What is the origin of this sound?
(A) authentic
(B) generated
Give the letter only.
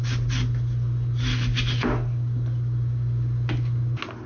A